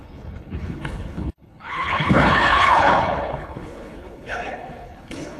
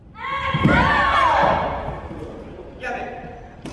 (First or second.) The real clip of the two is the second